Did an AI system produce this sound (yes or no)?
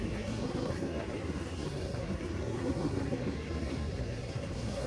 yes